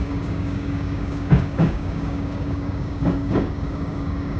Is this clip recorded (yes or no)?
no